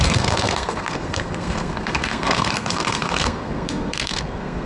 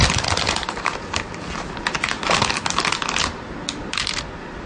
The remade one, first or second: first